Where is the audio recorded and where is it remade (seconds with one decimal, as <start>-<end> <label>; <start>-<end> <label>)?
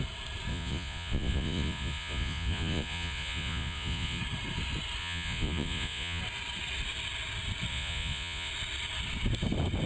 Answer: 0.0-0.5 recorded; 0.5-4.2 remade; 4.2-5.0 recorded; 5.0-6.2 remade; 6.2-7.7 recorded; 7.7-8.5 remade; 8.5-9.9 recorded